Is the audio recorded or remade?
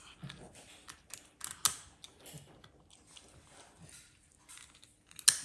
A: recorded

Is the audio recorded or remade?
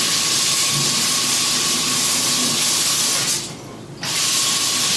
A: recorded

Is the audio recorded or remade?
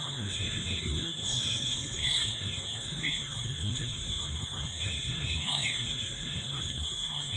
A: remade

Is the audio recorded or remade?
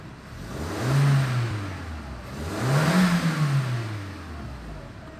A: recorded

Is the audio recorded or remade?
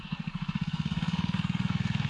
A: remade